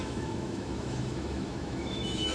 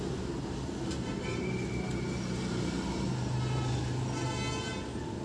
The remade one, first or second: first